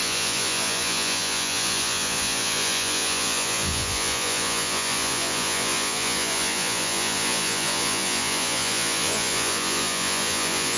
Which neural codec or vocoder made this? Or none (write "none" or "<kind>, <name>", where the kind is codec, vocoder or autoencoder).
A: vocoder, Vocos